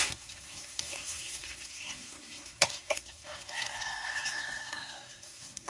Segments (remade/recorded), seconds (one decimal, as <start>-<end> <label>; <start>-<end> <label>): 0.0-5.7 remade